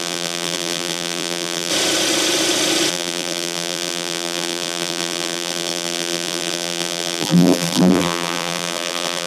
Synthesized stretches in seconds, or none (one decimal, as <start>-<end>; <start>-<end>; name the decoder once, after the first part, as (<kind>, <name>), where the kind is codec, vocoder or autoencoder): 0.0-1.7 (vocoder, BigVGAN v2); 2.9-9.3